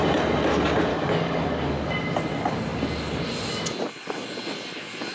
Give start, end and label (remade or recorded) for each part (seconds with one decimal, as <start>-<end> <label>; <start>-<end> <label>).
0.0-0.9 recorded; 0.9-1.9 remade; 1.9-5.1 recorded